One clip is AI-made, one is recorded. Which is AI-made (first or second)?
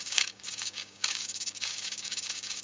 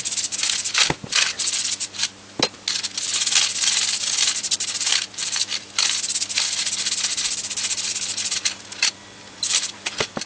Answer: first